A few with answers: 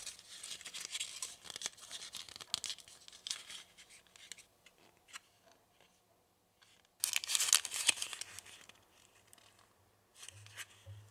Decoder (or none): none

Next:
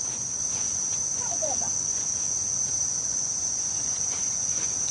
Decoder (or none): vocoder, Vocos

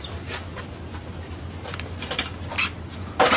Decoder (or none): vocoder, BigVGAN v2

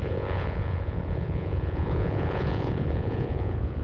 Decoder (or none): vocoder, Vocos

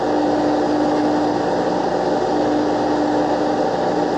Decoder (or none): none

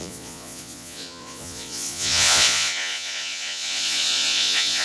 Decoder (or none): vocoder, Vocos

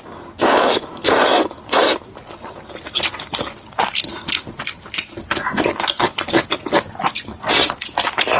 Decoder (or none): none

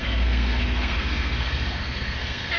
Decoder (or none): codec, SNAC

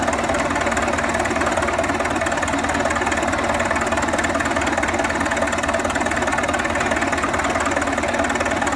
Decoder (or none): none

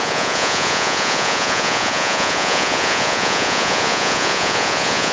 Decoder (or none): vocoder, Vocos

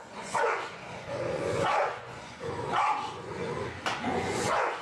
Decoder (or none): vocoder, Vocos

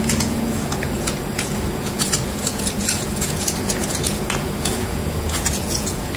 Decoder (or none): vocoder, Vocos